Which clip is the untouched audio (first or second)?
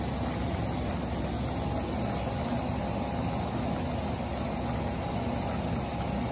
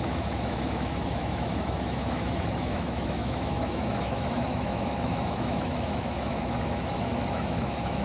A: first